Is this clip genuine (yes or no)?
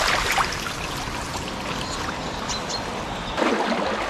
yes